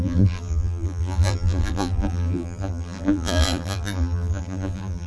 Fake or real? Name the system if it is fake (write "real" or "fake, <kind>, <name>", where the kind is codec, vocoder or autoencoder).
fake, vocoder, BigVGAN v2